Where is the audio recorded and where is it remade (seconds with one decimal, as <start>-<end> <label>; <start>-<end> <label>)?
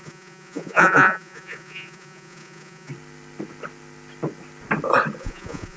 0.0-2.9 remade; 2.9-5.2 recorded; 5.2-5.8 remade